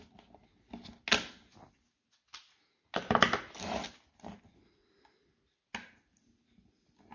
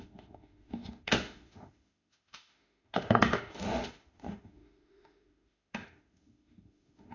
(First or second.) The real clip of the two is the first